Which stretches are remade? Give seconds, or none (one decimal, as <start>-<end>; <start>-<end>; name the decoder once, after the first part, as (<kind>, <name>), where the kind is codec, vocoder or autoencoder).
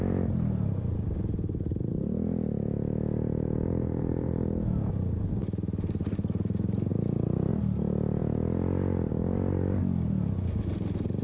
3.8-4.4 (vocoder, BigVGAN v2)